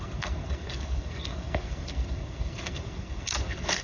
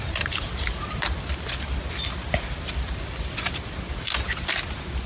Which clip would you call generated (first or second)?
first